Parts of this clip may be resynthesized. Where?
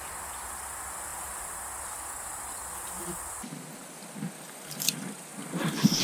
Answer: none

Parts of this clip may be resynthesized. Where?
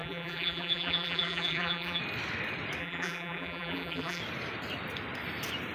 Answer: 0.0-2.0 (vocoder, BigVGAN v2); 2.8-4.2